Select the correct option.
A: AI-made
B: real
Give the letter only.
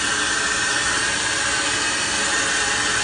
B